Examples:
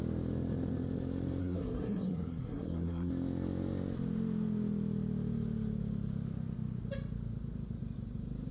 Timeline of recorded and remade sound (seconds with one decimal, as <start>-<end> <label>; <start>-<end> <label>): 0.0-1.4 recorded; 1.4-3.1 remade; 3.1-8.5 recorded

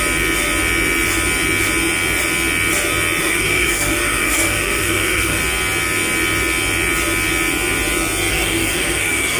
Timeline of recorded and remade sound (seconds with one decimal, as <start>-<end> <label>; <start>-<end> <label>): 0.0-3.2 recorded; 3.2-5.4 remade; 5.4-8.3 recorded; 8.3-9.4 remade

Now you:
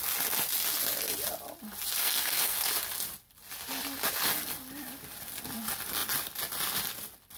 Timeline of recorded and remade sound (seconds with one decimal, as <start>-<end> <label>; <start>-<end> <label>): 0.0-2.0 recorded; 2.0-2.7 remade; 2.7-7.4 recorded

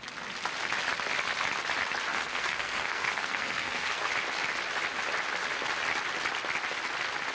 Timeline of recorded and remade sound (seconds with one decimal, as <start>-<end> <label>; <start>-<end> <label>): 0.0-2.1 recorded; 2.1-4.1 remade; 4.1-7.3 recorded